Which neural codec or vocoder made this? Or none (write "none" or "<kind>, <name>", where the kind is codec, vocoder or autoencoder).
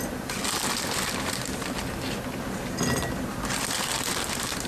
none